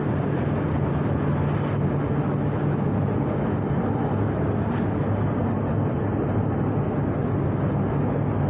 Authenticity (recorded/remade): recorded